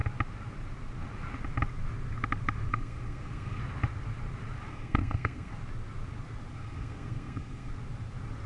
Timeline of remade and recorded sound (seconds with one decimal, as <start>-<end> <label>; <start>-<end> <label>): 0.0-2.7 recorded; 2.7-3.6 remade; 3.6-4.7 recorded; 4.7-5.5 remade; 5.5-6.5 recorded; 6.5-7.7 remade; 7.7-8.5 recorded